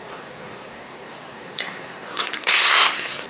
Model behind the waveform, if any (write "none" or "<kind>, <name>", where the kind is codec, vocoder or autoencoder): codec, SNAC